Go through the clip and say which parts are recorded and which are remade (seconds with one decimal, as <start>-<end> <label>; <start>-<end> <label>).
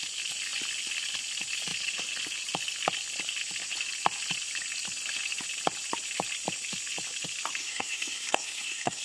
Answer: 0.0-7.6 recorded; 7.6-9.0 remade